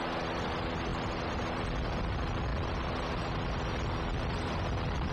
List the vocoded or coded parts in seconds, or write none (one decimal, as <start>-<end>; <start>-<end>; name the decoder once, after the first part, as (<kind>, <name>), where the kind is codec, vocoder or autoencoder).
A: none